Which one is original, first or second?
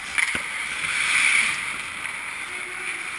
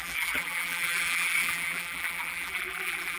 first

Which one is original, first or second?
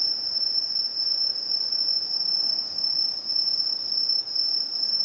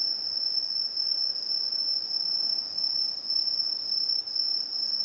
second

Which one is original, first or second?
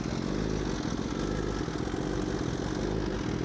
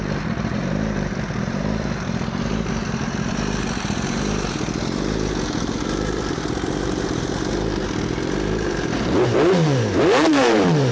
first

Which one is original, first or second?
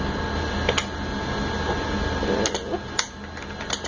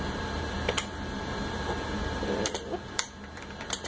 first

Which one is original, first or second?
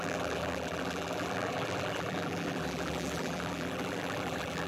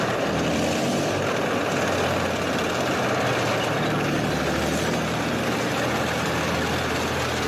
second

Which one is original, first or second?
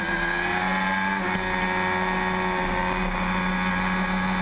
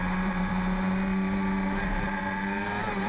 first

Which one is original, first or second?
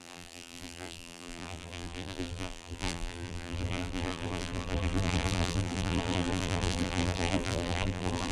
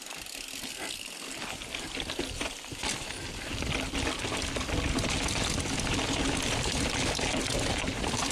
second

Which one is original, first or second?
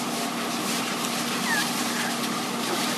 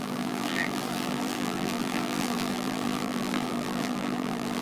first